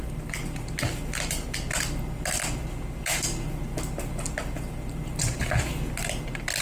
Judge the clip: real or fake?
real